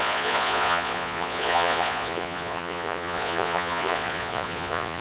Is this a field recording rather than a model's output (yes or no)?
no